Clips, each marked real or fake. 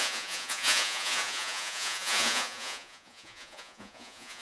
fake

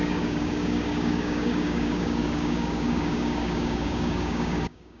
fake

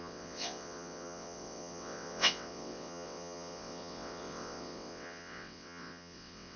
fake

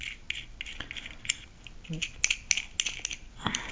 real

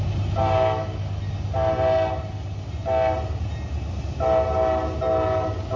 real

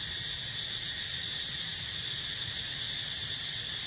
real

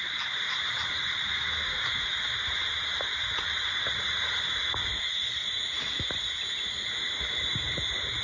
real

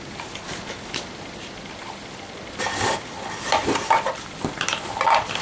real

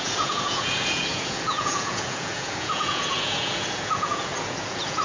fake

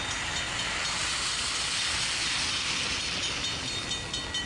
real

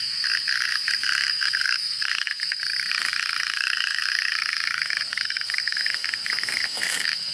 fake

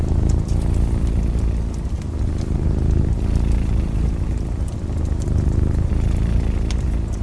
real